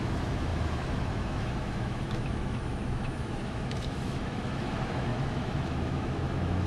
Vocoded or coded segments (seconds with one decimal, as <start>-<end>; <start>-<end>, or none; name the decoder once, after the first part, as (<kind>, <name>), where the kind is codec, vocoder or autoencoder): 0.0-6.7 (autoencoder, DAC-VAE)

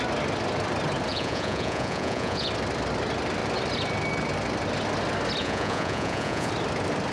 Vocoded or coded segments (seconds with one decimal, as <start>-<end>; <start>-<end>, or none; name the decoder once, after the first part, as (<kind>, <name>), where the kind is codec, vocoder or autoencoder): 1.1-2.5 (vocoder, Vocos); 5.4-6.5

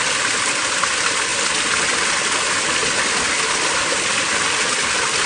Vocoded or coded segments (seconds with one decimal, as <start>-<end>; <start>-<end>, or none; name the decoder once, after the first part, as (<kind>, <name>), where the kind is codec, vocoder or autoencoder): none

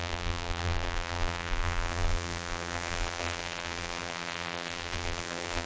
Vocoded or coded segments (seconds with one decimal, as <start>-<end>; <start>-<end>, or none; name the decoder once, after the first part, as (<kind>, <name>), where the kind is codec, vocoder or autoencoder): 0.0-5.7 (vocoder, BigVGAN v2)

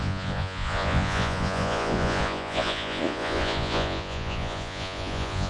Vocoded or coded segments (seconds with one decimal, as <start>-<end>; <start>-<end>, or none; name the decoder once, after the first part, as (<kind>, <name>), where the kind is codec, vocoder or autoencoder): 0.0-5.5 (vocoder, Vocos)

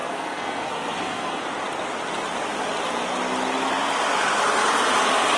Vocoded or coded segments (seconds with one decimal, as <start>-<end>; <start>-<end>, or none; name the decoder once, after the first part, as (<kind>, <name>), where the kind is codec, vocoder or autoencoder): 0.0-1.4 (codec, SNAC)

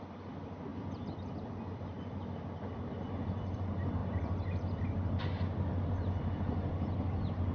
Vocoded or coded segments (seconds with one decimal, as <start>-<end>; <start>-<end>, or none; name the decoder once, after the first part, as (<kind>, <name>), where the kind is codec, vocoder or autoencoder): none